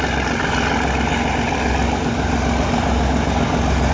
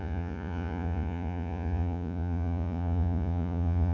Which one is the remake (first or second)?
second